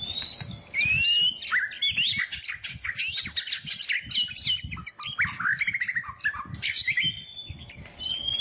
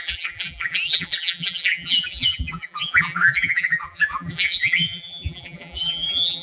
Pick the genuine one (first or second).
first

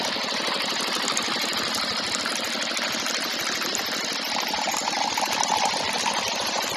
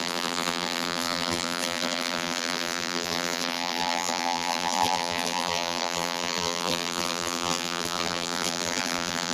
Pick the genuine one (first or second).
first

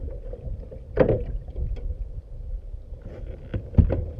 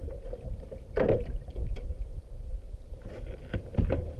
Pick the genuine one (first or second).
first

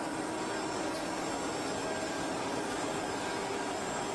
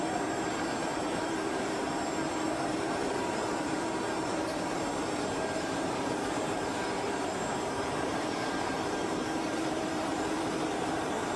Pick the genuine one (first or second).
first